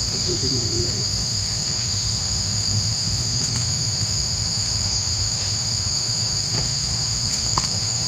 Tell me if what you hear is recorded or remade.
remade